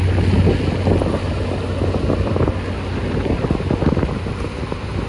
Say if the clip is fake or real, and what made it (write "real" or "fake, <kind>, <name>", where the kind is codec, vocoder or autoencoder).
real